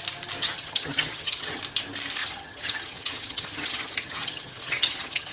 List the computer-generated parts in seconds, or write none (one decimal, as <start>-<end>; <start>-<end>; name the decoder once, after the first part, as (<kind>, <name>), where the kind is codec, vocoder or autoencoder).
0.4-1.6 (vocoder, HiFi-GAN); 2.2-5.3